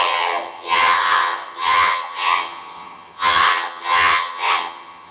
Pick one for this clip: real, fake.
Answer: fake